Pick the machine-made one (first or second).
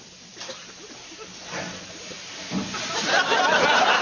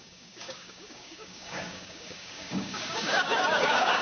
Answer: second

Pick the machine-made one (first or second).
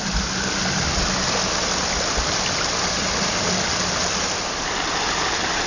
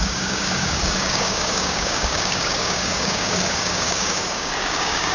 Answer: second